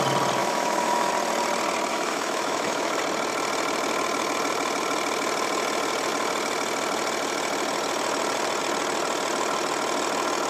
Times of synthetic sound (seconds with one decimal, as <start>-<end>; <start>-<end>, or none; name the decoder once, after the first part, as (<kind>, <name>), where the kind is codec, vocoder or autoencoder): 0.4-1.1 (autoencoder, DAC-VAE); 1.9-3.0